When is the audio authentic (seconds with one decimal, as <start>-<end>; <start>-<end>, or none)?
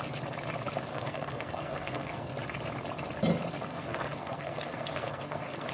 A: 0.0-0.9; 2.3-3.7